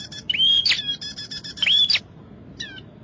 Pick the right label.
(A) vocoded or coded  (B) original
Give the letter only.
B